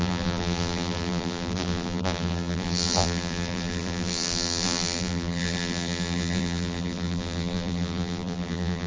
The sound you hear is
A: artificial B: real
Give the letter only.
A